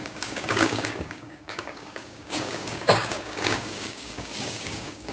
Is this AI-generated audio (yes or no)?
yes